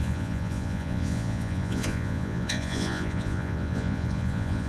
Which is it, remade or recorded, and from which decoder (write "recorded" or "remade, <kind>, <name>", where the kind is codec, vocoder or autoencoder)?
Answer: remade, vocoder, Vocos